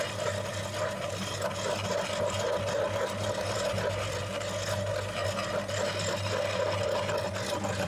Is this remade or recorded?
recorded